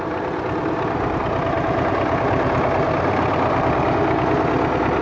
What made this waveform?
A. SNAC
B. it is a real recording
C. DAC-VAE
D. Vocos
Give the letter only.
B